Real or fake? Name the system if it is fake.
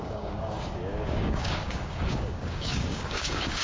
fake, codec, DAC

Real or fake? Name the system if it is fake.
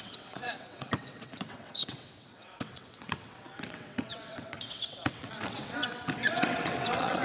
fake, vocoder, WaveNeXt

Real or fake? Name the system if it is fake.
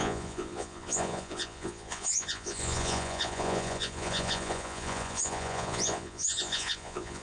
fake, vocoder, Vocos